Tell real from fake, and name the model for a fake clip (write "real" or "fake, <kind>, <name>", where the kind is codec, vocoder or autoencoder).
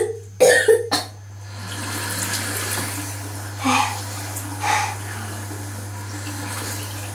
real